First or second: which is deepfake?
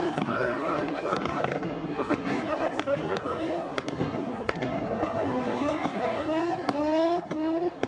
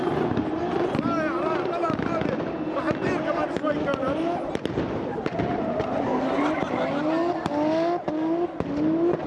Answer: first